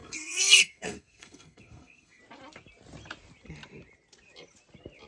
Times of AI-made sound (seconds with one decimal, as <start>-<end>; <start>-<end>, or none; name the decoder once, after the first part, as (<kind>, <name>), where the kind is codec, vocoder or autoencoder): 0.0-2.2 (codec, SNAC)